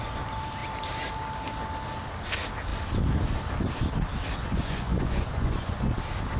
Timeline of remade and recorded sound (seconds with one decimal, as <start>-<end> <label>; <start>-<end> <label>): 0.0-4.4 recorded; 4.4-5.9 remade; 5.9-6.4 recorded